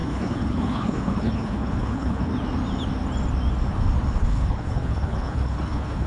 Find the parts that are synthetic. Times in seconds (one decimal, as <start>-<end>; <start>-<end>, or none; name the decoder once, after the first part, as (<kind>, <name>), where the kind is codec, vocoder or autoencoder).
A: 0.0-2.3 (codec, HILCodec); 4.2-6.1